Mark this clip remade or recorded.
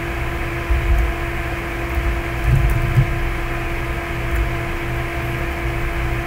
recorded